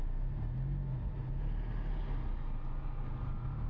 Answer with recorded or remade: recorded